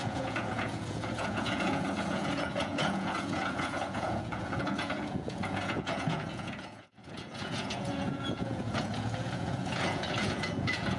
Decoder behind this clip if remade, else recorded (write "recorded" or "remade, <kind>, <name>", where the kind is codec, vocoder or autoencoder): remade, vocoder, Vocos